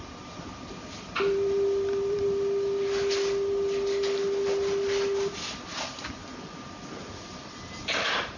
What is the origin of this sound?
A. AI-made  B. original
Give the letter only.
B